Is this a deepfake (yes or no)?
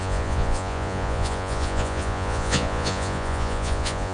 yes